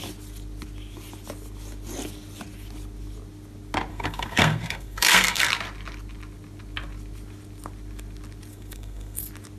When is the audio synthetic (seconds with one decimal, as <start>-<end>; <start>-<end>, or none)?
3.9-5.5; 8.5-9.2